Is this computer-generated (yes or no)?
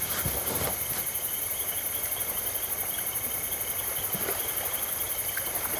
no